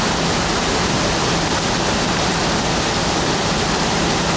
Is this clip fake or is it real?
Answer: real